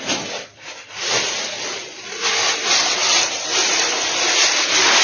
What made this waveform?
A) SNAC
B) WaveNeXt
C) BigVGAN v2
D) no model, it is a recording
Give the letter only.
C